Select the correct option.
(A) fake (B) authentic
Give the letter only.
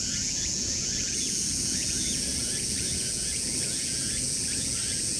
A